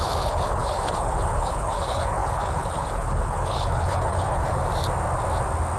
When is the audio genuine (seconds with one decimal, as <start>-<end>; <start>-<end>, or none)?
4.6-5.8